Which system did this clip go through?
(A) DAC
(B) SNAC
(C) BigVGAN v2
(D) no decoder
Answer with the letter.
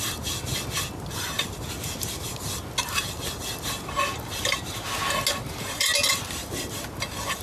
D